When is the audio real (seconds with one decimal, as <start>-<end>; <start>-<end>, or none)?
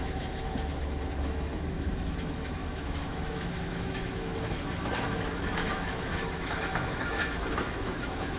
none